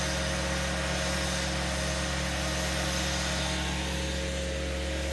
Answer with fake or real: real